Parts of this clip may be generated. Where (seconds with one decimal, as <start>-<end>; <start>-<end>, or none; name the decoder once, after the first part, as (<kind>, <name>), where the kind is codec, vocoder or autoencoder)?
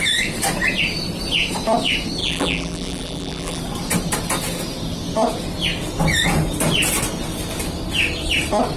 2.2-3.6 (vocoder, BigVGAN v2)